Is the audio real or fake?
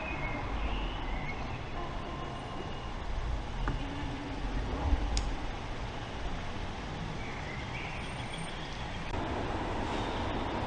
real